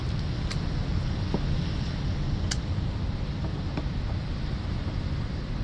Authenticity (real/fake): real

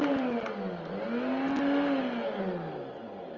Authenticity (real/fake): real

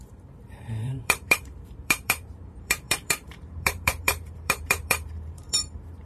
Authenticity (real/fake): fake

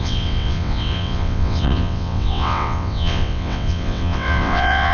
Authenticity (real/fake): fake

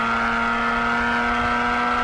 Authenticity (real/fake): real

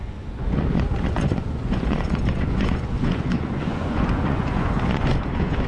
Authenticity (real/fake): fake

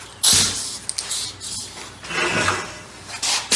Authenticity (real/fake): real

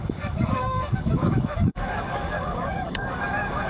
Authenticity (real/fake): fake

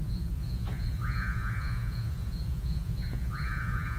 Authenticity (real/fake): fake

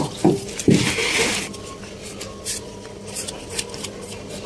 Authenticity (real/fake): real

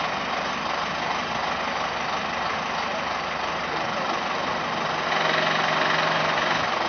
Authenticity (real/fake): real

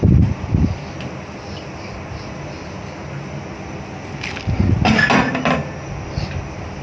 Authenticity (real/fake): real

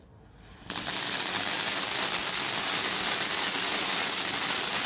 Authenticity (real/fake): real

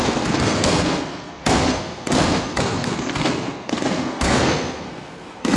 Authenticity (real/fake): fake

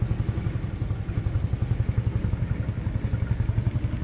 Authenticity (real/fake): real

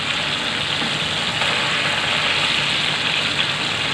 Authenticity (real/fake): real